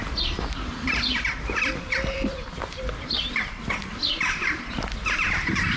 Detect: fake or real fake